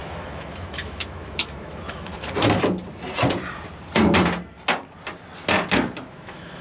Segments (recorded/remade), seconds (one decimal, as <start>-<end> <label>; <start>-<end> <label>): 0.0-2.1 remade; 2.1-6.1 recorded; 6.1-6.6 remade